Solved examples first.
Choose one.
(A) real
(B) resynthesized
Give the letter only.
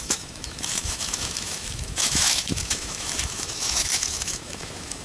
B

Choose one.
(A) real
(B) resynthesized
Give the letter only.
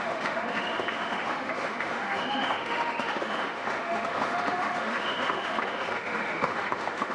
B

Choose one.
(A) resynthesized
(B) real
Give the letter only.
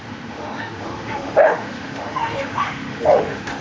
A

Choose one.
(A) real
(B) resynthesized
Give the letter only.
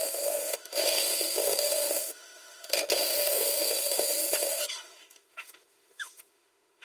B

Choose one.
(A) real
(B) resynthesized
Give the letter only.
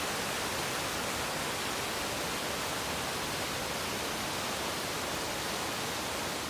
A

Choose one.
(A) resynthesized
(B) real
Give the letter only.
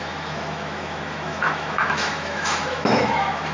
A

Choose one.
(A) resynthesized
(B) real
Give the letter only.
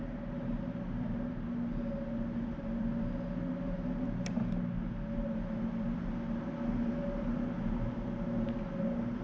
B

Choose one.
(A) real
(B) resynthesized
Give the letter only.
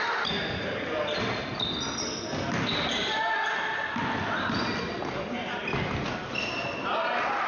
A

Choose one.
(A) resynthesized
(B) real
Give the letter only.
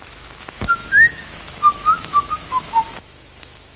A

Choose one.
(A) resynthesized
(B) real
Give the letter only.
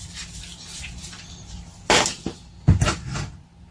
B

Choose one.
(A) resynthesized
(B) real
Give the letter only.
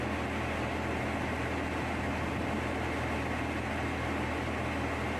B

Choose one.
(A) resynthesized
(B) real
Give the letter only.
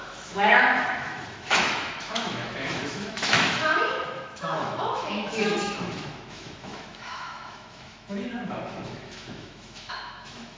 A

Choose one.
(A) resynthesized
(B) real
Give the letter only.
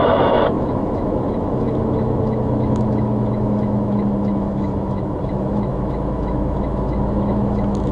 A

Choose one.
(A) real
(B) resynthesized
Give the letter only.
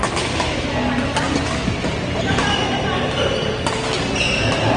A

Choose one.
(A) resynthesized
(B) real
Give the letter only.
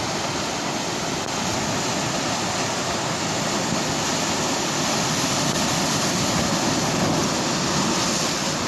B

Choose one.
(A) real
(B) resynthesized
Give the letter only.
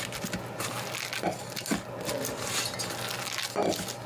A